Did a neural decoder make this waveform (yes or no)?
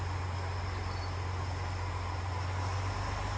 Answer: no